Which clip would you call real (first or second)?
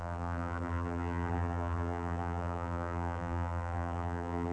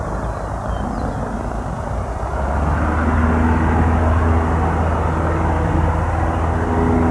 second